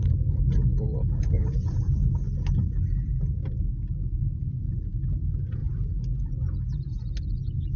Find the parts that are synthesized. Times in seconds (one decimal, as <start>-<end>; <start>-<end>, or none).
none